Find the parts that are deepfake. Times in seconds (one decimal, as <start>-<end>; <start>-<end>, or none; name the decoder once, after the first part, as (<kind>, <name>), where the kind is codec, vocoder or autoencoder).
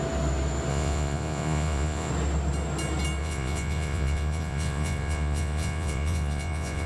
0.7-2.1 (vocoder, Vocos); 3.2-6.9